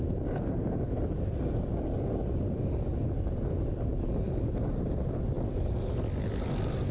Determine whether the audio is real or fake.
real